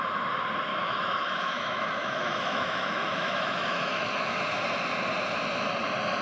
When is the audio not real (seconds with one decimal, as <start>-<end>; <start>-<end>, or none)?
0.7-4.4